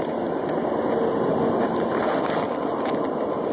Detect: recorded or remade recorded